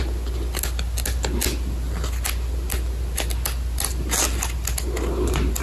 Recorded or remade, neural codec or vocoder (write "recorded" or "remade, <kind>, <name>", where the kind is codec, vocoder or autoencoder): recorded